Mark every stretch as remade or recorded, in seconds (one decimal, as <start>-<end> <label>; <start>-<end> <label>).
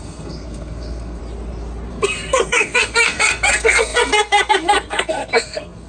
0.0-1.2 remade; 1.2-1.9 recorded; 1.9-5.9 remade